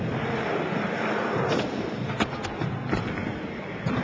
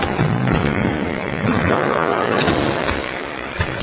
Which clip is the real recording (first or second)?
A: first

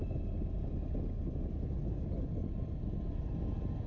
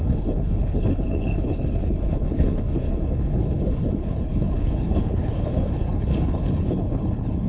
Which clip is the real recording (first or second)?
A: first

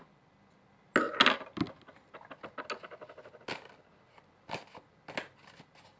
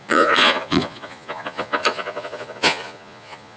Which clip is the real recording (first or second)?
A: first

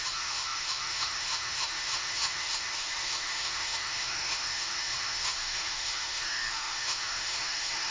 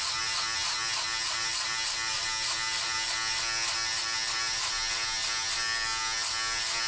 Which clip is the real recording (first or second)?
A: second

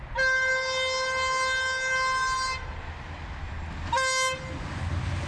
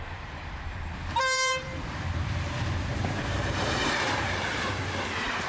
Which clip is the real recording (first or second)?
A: first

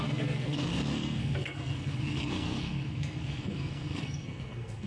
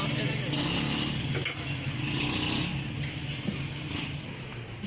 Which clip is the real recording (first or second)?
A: second